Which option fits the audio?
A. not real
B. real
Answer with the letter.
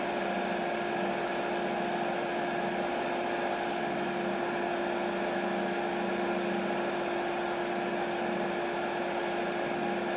B